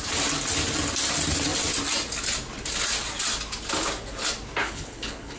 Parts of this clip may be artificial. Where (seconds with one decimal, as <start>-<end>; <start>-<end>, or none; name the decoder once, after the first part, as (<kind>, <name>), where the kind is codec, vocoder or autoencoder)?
4.6-5.4 (codec, HILCodec)

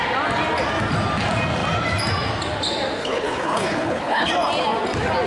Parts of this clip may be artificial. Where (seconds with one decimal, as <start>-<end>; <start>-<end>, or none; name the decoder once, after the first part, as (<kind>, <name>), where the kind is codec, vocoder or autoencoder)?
3.0-4.3 (codec, HILCodec)

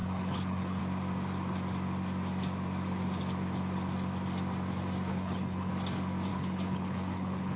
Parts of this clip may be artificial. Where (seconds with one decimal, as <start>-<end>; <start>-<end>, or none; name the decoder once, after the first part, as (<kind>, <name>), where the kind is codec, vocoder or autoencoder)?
0.0-0.8 (codec, HILCodec); 5.1-5.7; 6.3-7.6

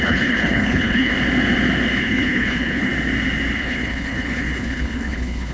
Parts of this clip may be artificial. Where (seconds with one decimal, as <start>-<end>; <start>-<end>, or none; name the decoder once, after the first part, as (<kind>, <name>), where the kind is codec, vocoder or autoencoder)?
0.0-1.1 (codec, HILCodec); 2.0-2.9; 3.6-5.5

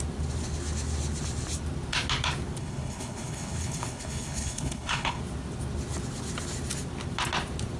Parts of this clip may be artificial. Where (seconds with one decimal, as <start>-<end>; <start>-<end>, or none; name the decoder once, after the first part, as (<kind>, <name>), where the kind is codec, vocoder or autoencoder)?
2.6-5.2 (codec, HILCodec)